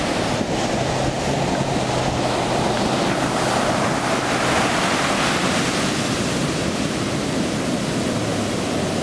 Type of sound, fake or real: real